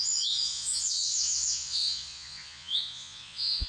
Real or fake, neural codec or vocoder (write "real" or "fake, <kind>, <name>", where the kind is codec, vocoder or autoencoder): fake, vocoder, Vocos